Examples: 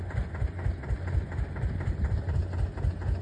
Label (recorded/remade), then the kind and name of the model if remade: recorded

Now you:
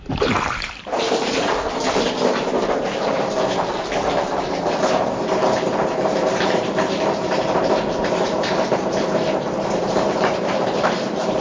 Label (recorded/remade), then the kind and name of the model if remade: remade, vocoder, BigVGAN v2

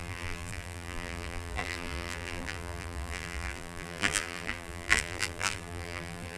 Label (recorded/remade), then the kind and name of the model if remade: remade, vocoder, BigVGAN v2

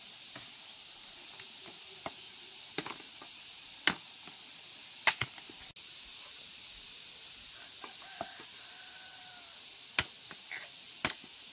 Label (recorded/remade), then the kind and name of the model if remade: recorded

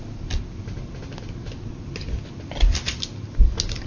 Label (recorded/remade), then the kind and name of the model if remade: recorded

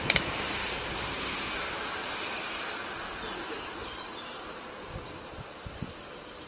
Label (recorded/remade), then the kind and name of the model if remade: remade, vocoder, BigVGAN v2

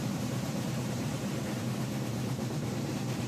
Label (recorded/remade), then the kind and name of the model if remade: remade, vocoder, BigVGAN v2